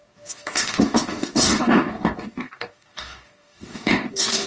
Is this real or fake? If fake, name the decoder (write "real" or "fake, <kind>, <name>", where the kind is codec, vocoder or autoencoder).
fake, codec, DAC